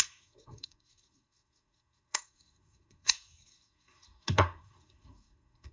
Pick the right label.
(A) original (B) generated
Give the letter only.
B